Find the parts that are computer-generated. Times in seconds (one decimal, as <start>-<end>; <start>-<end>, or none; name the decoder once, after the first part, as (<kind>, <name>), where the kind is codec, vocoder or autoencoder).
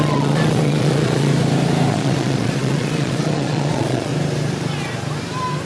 0.0-1.3 (vocoder, Vocos); 1.9-4.1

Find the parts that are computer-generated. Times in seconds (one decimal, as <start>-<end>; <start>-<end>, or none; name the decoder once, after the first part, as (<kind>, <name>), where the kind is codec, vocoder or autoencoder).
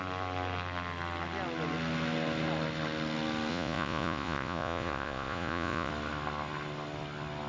3.5-5.9 (vocoder, Vocos)